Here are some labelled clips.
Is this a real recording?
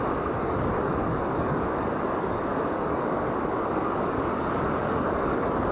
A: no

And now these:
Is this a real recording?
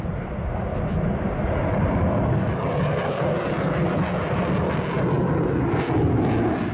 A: yes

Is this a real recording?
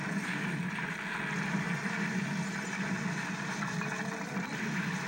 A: yes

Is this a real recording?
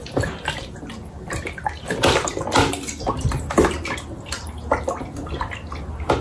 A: yes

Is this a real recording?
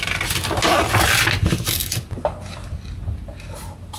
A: yes